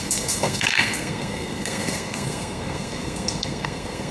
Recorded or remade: remade